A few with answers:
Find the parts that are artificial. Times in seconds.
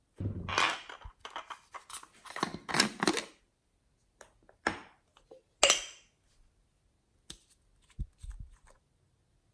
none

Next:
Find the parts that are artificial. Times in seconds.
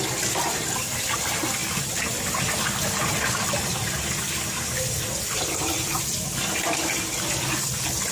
none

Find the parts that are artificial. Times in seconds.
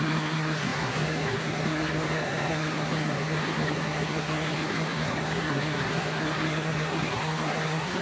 0.0-8.0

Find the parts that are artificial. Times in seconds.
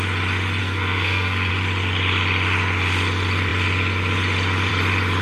0.6-1.5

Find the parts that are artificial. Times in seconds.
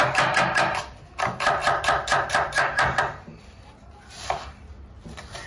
none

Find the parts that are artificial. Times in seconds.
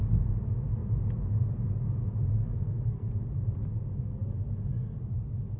2.3-3.1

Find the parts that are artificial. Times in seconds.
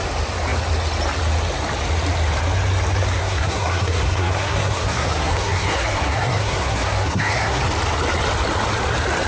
3.2-7.6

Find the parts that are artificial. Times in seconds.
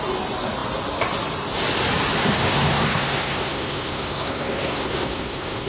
2.2-5.7